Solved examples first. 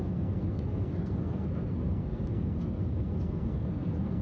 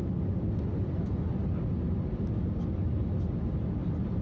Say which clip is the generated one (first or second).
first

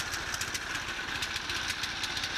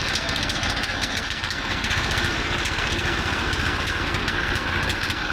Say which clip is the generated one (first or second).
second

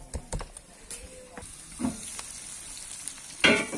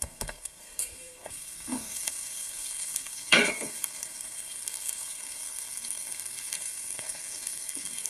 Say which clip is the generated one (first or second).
second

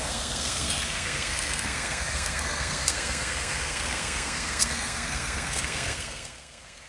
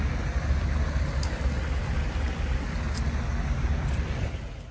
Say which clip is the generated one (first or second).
first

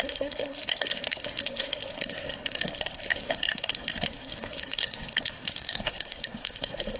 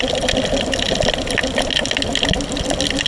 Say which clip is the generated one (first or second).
first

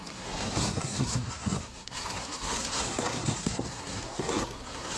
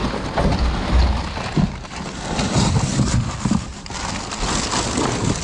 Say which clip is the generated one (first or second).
first